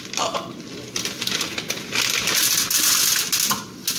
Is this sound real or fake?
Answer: real